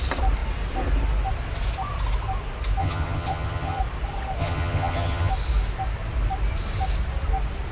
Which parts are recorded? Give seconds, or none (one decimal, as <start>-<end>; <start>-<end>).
0.0-2.8; 3.8-4.4; 5.3-7.7